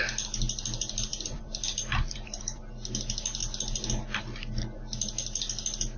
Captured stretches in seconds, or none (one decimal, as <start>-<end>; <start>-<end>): 0.0-1.1; 2.6-6.0